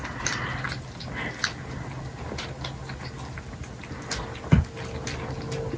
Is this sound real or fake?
real